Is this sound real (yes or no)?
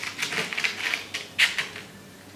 yes